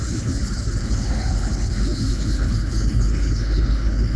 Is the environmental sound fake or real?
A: fake